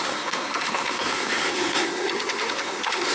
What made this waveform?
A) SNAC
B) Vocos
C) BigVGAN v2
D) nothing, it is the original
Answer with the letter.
A